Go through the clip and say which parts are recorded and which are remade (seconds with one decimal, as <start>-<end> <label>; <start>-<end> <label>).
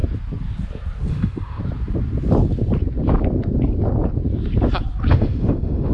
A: 0.0-1.1 recorded; 1.1-1.6 remade; 1.6-5.1 recorded; 5.1-5.9 remade